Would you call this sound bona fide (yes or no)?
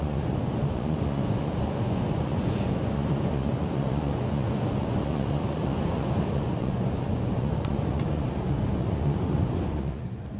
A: no